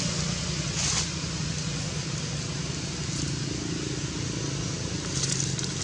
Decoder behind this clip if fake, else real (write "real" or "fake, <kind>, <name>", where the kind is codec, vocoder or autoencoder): real